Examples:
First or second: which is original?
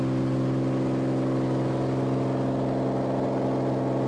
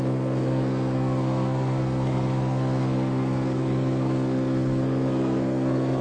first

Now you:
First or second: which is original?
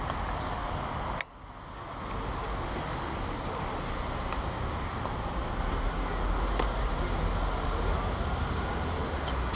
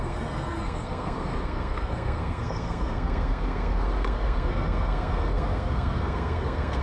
first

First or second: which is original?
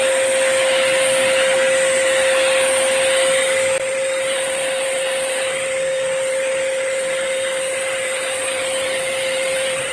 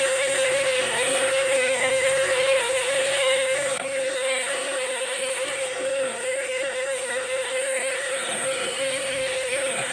first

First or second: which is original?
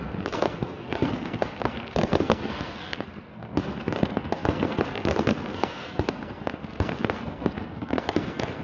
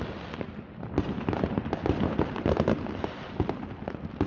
second